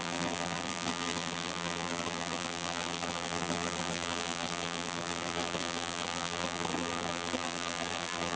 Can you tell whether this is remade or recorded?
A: remade